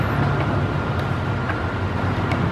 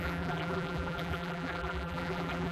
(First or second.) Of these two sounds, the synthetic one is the second